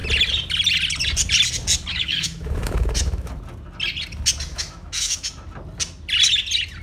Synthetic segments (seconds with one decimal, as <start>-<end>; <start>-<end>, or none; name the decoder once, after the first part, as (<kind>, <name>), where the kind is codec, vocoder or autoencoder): 1.9-3.3 (autoencoder, DAC-VAE); 4.5-5.3